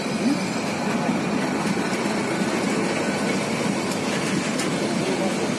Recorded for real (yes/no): yes